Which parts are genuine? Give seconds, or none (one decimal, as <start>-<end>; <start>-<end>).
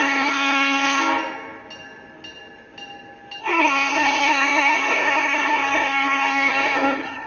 1.0-3.4